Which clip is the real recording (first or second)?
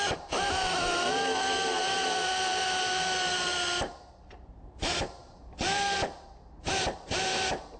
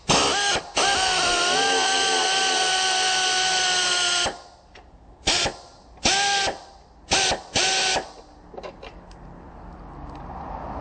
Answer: second